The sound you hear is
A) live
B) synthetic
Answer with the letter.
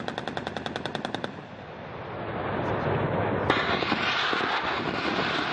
A